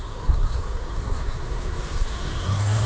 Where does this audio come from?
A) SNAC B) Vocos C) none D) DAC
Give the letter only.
A